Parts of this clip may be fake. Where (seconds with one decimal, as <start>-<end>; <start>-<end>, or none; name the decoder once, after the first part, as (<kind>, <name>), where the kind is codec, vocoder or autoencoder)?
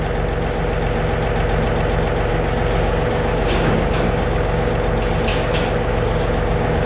2.3-4.7 (codec, DAC); 5.3-6.9